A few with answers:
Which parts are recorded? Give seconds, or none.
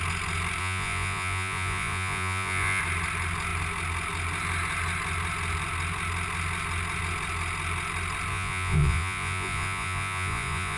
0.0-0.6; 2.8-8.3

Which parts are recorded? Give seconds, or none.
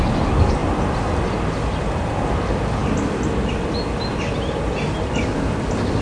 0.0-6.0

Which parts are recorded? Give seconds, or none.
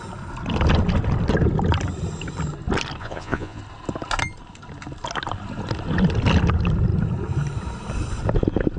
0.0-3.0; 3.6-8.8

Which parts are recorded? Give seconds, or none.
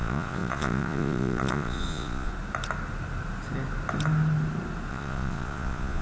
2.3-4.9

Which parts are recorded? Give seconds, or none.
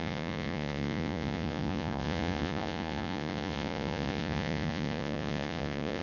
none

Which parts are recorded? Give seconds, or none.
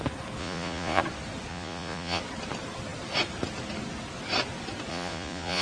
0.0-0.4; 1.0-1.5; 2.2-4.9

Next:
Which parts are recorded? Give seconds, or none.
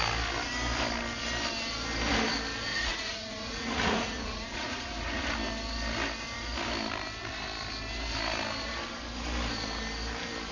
0.0-2.7; 5.2-10.5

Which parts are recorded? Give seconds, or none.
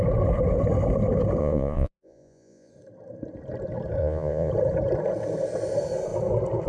0.0-1.4; 2.7-4.0; 4.5-6.7